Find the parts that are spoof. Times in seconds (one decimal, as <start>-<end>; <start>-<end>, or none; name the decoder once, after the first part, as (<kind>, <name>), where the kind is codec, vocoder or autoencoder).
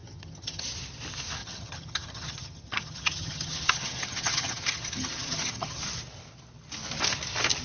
0.0-0.6 (vocoder, HiFi-GAN); 1.4-5.8